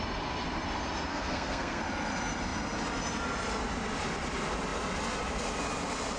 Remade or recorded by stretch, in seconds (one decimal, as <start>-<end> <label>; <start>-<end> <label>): 0.0-1.1 recorded; 1.1-1.8 remade; 1.8-6.2 recorded